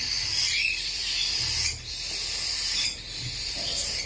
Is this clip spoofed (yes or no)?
yes